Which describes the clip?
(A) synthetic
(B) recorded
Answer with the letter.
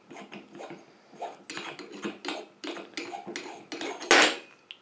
B